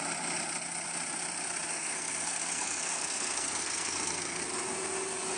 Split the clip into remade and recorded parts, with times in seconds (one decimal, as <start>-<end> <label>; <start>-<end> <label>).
0.0-1.7 recorded; 1.7-4.4 remade; 4.4-5.4 recorded